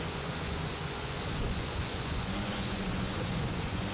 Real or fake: fake